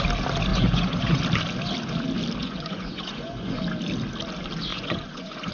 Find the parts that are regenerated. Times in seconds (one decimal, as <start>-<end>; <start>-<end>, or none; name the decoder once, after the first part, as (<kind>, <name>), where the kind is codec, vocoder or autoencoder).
0.5-1.2 (vocoder, Vocos); 2.4-3.6; 4.7-5.5